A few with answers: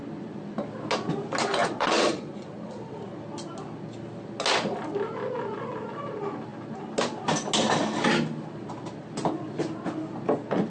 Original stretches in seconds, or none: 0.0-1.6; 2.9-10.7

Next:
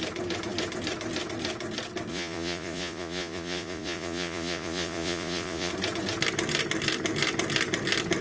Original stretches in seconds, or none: 0.0-2.1; 5.7-8.2